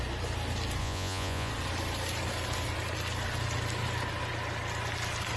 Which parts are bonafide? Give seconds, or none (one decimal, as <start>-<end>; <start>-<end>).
0.0-0.8; 1.5-5.4